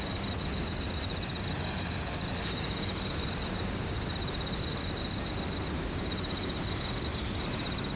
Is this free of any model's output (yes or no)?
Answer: yes